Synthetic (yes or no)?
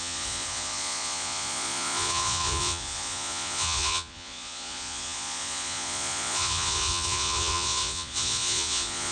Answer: yes